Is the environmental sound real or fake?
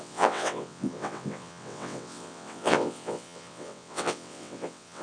fake